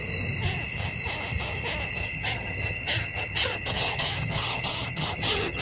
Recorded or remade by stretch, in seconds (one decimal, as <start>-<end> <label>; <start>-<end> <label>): 0.0-2.0 recorded; 2.0-5.6 remade